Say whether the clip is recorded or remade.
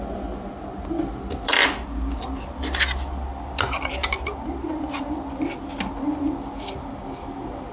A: recorded